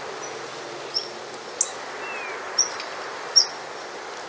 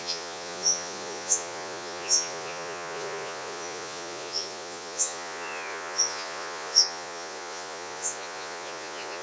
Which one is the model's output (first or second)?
second